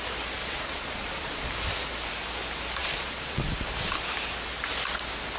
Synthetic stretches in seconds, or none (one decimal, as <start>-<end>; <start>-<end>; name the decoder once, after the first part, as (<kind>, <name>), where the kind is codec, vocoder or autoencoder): 0.4-1.5 (vocoder, Vocos); 2.8-3.4